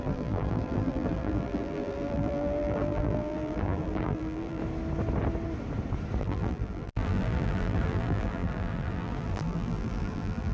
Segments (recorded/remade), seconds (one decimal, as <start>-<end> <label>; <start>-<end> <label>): 0.0-4.6 remade; 4.6-6.2 recorded; 6.2-10.5 remade